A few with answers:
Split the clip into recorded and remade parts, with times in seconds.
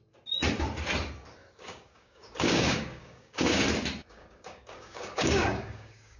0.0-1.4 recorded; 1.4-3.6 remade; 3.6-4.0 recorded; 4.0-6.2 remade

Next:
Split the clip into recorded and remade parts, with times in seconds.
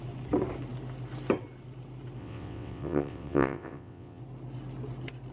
0.0-2.2 recorded; 2.2-4.2 remade; 4.2-5.3 recorded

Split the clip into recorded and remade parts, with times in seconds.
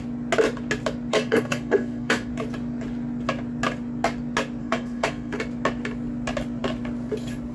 0.0-1.1 recorded; 1.1-2.3 remade; 2.3-4.6 recorded; 4.6-5.4 remade; 5.4-7.5 recorded